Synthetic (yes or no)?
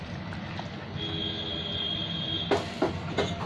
no